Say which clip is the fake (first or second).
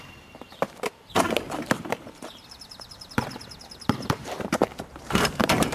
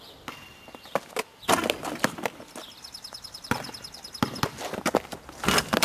first